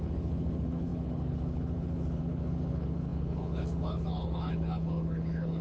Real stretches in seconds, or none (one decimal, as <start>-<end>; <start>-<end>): none